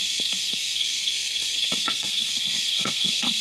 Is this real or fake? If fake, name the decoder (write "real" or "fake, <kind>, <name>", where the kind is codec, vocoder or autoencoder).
fake, codec, SNAC